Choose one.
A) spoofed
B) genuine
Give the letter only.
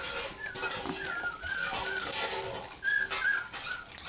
B